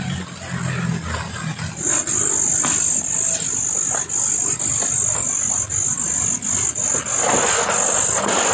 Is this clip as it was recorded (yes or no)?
yes